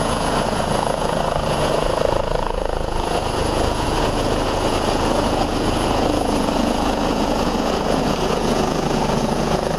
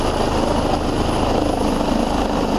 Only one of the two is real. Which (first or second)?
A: second